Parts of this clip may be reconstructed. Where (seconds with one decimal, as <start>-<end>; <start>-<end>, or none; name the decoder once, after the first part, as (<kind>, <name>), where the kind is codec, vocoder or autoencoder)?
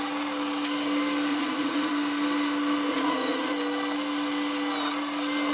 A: 1.3-1.9 (vocoder, Vocos); 2.9-3.5